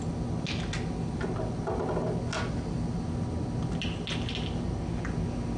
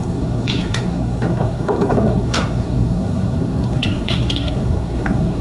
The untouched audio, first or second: first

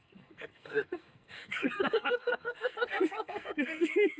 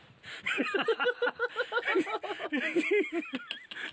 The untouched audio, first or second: second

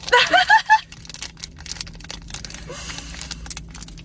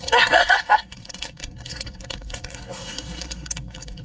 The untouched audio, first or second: first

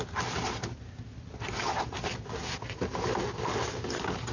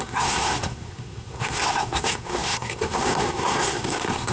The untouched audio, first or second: first